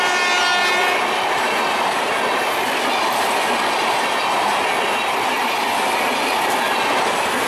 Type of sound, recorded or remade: recorded